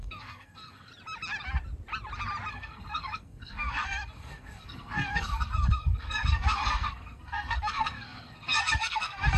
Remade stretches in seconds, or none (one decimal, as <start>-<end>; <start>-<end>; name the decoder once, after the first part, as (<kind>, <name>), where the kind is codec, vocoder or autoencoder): 0.0-0.9 (codec, SNAC); 2.5-9.4